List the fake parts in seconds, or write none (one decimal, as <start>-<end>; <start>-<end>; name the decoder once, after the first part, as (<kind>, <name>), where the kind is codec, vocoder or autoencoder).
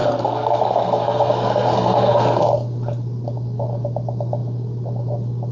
0.0-2.4 (codec, SNAC)